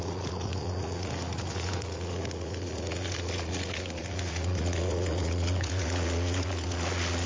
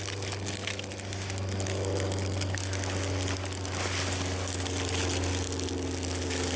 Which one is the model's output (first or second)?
first